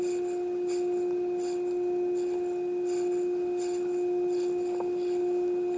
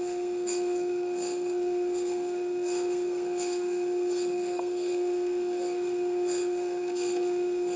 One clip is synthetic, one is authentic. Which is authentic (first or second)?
first